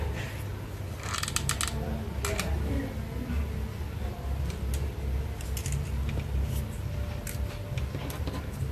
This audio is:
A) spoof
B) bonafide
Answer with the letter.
B